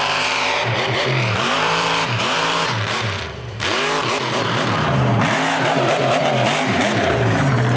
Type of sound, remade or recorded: remade